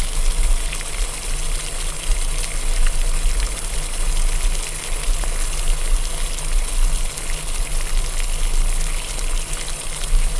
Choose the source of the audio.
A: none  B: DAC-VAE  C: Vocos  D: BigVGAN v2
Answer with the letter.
A